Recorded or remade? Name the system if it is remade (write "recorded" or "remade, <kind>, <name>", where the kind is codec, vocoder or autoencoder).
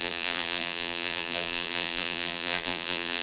remade, vocoder, BigVGAN v2